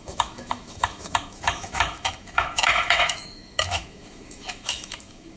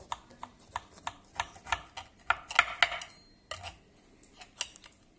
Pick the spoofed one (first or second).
first